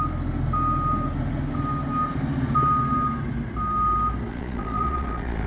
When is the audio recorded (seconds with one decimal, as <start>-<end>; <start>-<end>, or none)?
0.0-4.3